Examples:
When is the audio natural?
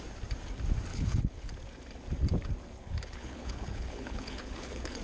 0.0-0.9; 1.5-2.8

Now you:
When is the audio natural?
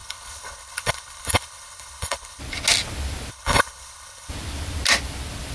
2.4-3.3; 4.3-5.5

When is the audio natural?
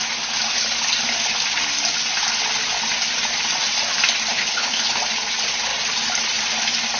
0.0-4.3; 5.0-7.0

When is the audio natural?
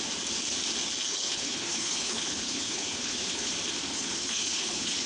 0.0-1.0; 3.5-3.9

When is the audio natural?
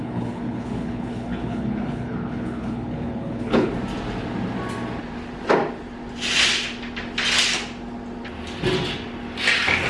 3.7-9.9